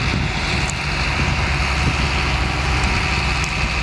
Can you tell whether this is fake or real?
real